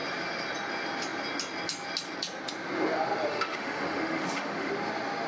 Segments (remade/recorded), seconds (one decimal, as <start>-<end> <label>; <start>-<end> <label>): 0.0-3.3 recorded; 3.3-4.7 remade; 4.7-5.3 recorded